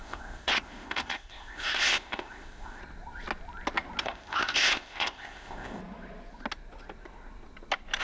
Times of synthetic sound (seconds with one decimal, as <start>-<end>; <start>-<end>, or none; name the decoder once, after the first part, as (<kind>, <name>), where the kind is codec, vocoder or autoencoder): 0.0-2.8 (codec, ZipCodec); 4.0-5.8